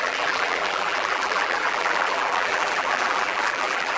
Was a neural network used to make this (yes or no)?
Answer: yes